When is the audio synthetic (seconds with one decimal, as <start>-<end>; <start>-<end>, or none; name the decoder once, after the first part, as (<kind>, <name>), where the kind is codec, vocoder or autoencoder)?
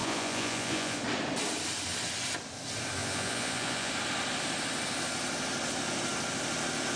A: 0.0-1.0 (vocoder, Vocos); 3.0-3.9